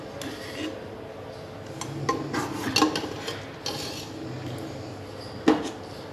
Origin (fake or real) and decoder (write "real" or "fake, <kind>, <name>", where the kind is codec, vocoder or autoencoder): real